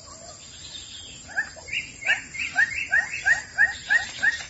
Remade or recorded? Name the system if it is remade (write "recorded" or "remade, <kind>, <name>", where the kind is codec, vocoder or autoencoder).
recorded